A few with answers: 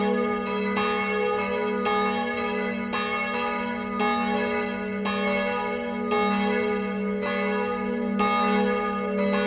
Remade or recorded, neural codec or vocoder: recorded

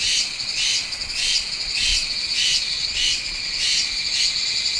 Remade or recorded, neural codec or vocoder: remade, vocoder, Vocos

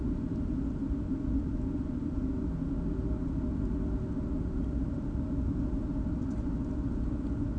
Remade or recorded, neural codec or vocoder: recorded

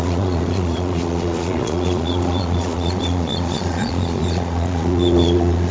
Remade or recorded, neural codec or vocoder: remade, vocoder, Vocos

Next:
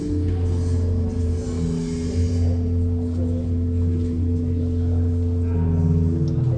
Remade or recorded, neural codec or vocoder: recorded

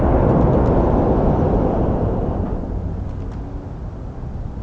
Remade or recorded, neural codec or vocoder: recorded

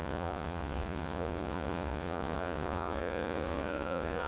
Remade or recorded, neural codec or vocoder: remade, vocoder, Vocos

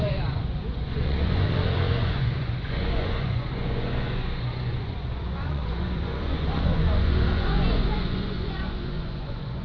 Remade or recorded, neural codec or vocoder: remade, vocoder, Vocos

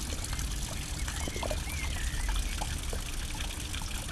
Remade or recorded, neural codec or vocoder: recorded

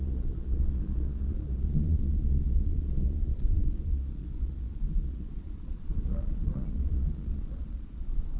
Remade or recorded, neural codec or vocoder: remade, vocoder, Vocos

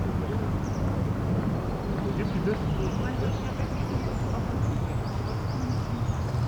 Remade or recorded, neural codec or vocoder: recorded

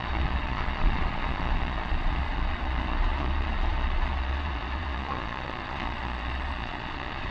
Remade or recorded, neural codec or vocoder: remade, vocoder, Vocos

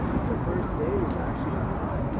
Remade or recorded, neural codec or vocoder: recorded